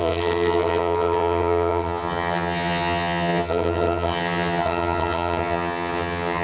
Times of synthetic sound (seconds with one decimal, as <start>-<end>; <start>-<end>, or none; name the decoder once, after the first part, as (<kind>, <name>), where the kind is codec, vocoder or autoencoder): 0.0-6.4 (vocoder, HiFi-GAN)